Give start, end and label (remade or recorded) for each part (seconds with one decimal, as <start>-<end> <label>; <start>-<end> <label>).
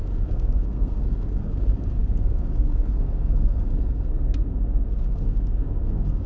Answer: 0.0-6.3 remade